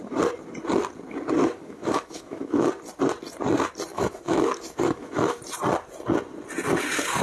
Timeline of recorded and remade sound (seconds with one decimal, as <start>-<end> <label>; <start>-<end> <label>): 0.0-1.4 recorded; 1.4-2.7 remade; 2.7-3.9 recorded; 3.9-5.4 remade; 5.4-7.2 recorded